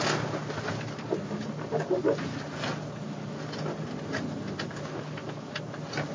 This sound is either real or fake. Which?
real